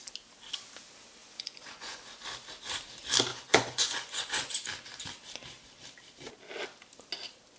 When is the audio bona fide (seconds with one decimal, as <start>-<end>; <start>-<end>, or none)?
0.0-1.2; 2.0-3.3; 4.5-7.6